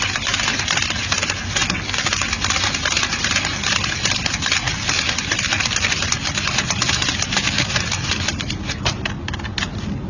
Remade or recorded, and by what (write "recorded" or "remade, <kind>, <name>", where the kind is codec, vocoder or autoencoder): recorded